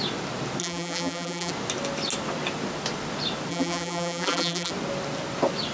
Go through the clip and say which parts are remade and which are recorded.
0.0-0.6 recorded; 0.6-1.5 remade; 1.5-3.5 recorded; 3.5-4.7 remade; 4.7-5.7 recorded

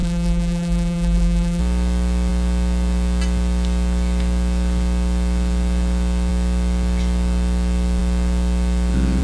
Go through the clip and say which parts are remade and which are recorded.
0.0-1.6 remade; 1.6-9.2 recorded

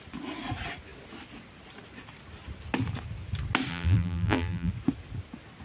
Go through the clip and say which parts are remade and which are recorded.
0.0-3.7 recorded; 3.7-4.7 remade; 4.7-5.6 recorded

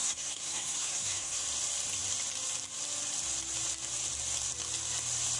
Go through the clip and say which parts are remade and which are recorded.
0.0-1.4 remade; 1.4-5.4 recorded

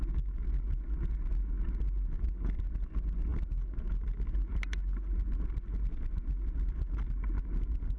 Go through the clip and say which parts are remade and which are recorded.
0.0-8.0 recorded

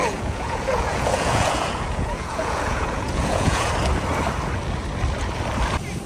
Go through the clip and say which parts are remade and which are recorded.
0.0-3.7 remade; 3.7-6.1 recorded